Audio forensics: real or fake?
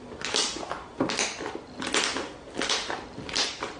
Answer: real